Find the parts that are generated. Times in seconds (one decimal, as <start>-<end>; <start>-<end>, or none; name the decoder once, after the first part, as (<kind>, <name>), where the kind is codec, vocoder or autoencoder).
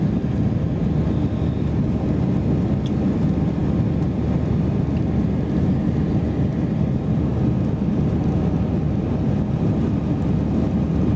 none